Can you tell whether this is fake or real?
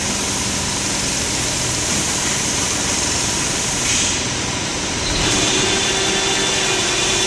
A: real